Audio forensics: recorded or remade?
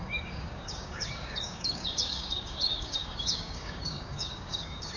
remade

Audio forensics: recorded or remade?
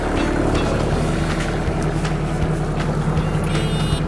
recorded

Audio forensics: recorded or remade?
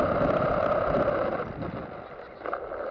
recorded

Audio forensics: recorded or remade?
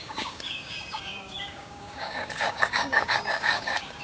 remade